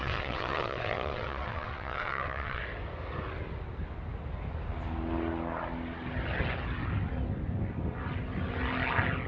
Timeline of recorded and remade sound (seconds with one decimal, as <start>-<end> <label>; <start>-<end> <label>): 0.0-2.6 remade; 2.6-9.3 recorded